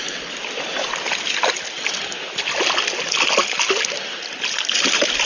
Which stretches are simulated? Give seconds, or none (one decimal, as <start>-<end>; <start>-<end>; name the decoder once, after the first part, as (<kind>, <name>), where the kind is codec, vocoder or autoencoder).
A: none